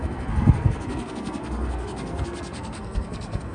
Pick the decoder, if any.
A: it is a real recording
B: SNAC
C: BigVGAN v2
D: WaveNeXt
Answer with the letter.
B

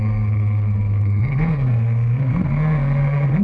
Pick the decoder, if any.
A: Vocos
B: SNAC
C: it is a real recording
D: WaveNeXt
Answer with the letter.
B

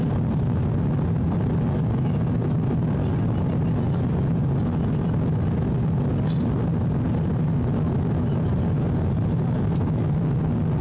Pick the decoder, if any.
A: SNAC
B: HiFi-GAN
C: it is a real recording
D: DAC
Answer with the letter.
C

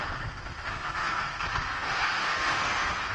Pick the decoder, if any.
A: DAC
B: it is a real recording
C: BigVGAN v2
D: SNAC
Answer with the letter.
D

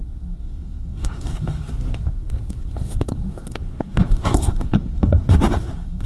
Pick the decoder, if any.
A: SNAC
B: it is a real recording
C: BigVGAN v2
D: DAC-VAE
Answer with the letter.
A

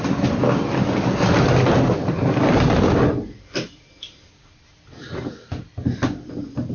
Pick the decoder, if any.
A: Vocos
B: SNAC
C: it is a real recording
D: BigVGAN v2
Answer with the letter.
C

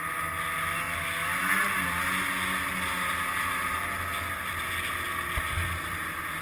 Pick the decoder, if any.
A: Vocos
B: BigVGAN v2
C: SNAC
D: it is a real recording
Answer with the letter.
D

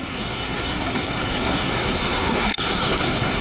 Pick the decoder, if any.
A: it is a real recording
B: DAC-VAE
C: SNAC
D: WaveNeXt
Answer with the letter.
C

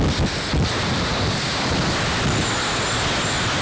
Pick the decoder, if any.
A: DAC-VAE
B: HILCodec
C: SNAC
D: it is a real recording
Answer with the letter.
D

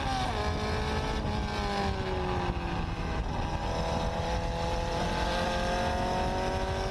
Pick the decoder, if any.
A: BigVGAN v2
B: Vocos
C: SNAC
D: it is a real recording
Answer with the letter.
D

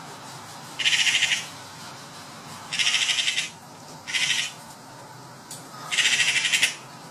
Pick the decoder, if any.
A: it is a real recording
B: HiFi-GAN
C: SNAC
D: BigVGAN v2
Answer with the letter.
A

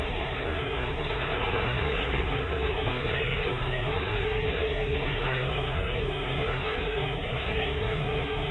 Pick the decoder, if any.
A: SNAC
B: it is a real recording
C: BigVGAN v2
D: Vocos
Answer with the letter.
A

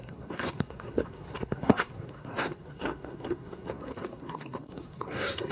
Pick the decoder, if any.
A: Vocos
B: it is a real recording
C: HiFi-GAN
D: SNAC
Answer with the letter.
D